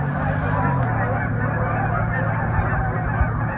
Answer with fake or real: real